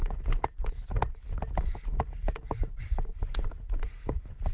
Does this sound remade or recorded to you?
recorded